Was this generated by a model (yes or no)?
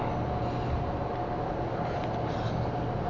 no